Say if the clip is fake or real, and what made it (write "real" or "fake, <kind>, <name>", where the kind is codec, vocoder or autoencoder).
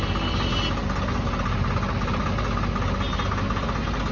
real